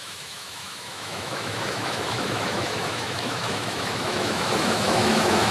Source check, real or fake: fake